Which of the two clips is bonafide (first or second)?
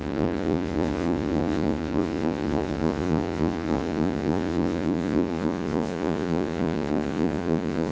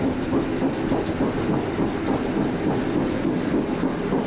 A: second